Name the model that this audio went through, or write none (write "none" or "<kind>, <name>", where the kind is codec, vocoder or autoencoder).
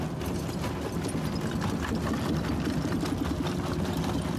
none